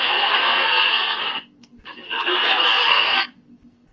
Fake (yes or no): yes